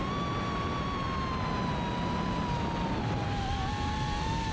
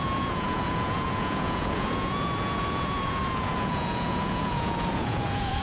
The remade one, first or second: second